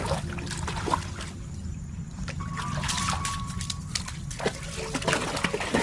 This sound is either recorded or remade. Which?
recorded